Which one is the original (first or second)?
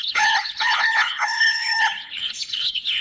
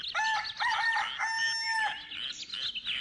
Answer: second